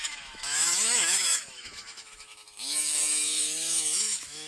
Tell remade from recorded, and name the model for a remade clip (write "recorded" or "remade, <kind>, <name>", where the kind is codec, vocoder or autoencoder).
remade, autoencoder, DAC-VAE